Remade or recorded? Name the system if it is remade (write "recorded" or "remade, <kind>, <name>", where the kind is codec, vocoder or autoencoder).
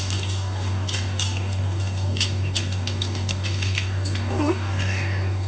remade, codec, DAC